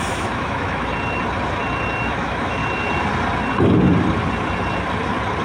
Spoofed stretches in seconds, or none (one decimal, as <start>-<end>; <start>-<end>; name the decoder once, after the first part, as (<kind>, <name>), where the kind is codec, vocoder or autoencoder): 0.0-0.9 (autoencoder, DAC-VAE); 2.0-2.6